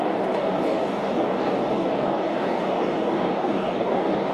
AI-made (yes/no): yes